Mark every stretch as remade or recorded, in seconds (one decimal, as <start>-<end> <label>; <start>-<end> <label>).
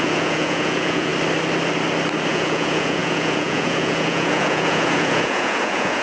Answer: 0.0-1.1 remade; 1.1-2.3 recorded; 2.3-6.0 remade